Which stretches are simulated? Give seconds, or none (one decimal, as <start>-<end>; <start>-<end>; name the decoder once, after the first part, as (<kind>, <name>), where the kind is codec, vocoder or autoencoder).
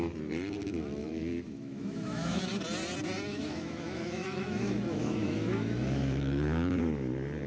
1.0-2.4 (autoencoder, DAC-VAE); 3.3-6.8